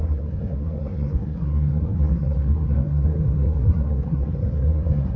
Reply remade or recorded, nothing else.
remade